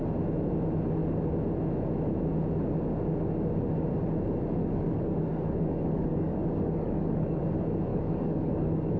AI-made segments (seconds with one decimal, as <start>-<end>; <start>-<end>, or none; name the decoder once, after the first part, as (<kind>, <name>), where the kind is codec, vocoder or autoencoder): 4.6-7.4 (codec, DAC); 7.9-9.0